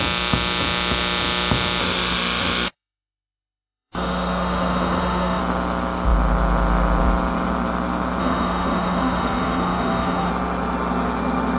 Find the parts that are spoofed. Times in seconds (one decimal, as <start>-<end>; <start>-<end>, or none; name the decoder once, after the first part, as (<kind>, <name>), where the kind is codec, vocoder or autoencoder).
1.8-5.4 (autoencoder, DAC-VAE); 8.2-10.3